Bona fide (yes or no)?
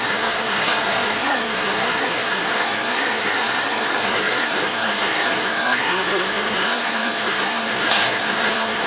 no